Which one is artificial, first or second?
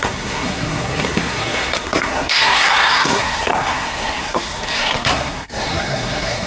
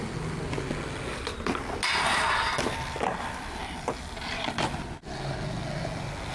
first